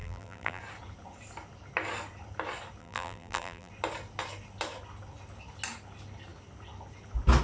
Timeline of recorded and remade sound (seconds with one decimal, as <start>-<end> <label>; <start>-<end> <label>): 0.0-0.6 remade; 0.6-2.8 recorded; 2.8-3.7 remade; 3.7-7.4 recorded